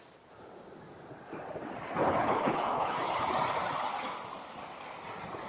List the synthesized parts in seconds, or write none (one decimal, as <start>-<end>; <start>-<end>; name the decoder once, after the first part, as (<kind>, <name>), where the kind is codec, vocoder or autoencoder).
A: 2.0-3.3 (codec, HILCodec)